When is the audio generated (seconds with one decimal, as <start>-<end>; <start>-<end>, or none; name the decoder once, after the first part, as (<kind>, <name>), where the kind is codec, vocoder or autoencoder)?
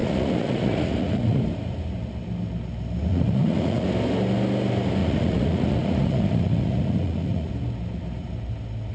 0.0-1.4 (vocoder, Vocos); 3.1-3.9; 5.0-7.5